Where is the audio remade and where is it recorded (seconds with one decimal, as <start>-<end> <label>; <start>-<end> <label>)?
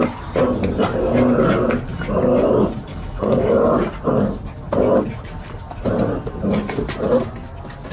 0.0-2.9 recorded; 2.9-3.6 remade; 3.6-7.9 recorded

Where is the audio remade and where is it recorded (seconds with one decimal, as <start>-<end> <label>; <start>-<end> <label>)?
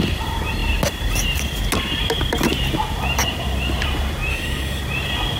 0.0-4.3 recorded; 4.3-4.8 remade; 4.8-5.4 recorded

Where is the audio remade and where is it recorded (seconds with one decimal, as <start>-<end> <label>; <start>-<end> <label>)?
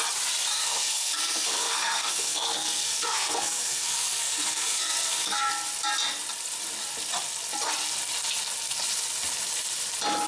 0.0-0.6 recorded; 0.6-5.5 remade; 5.5-10.3 recorded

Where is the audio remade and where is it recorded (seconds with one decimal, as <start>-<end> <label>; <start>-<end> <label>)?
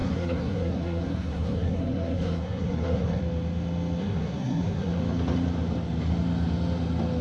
0.0-3.2 remade; 3.2-4.0 recorded; 4.0-5.0 remade; 5.0-7.2 recorded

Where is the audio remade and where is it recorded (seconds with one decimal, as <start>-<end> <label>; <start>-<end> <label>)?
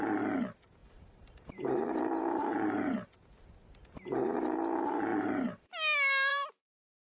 0.0-0.8 recorded; 0.8-3.1 remade; 3.1-5.1 recorded; 5.1-5.7 remade; 5.7-6.3 recorded; 6.3-7.2 remade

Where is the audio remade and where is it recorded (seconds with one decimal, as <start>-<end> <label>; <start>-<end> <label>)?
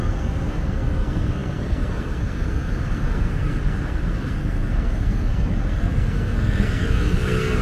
0.0-7.6 remade